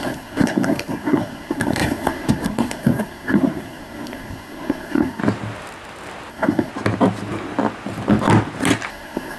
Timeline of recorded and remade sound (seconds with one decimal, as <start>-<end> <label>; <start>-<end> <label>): 0.0-5.2 remade; 5.2-6.3 recorded; 6.3-6.7 remade; 6.7-8.9 recorded; 8.9-9.4 remade